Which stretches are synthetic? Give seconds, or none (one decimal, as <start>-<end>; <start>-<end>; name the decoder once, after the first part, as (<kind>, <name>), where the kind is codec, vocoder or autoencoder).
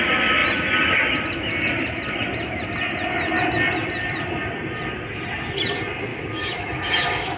6.1-7.4 (autoencoder, DAC-VAE)